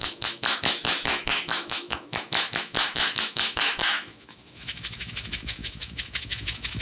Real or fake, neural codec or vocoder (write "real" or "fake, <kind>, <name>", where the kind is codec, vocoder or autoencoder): fake, autoencoder, DAC-VAE